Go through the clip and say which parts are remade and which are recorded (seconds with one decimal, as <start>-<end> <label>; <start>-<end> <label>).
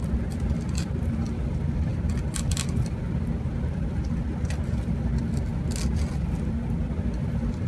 0.0-7.7 recorded